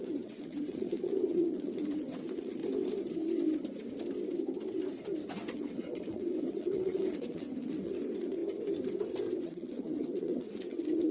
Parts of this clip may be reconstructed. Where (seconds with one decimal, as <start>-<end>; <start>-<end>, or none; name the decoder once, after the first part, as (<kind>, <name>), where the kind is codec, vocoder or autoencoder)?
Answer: 0.0-2.6 (vocoder, WaveNeXt); 5.3-8.4; 9.4-11.1